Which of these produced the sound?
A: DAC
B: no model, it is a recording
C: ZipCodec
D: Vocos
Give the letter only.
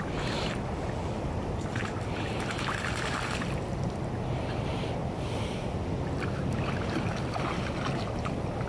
B